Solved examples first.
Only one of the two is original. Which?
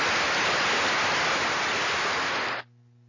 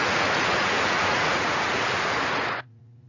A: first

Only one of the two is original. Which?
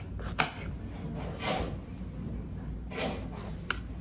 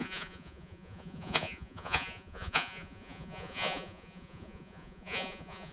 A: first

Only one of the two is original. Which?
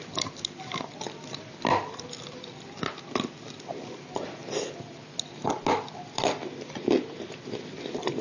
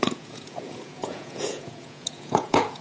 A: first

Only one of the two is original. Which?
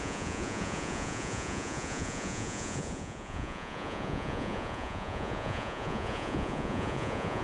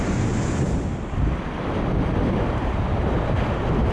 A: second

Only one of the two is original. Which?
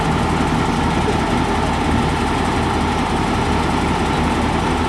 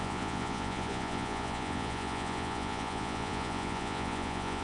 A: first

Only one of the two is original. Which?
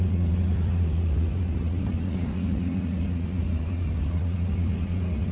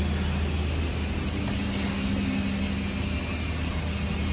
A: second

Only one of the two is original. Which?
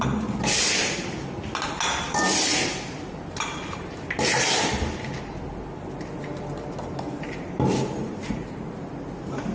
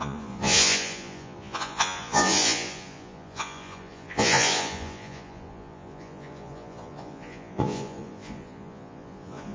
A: first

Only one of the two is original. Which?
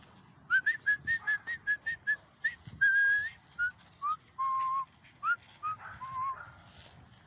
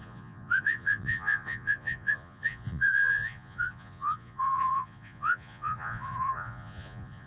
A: first